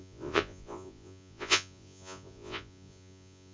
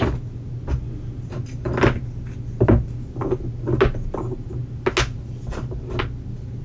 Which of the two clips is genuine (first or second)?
second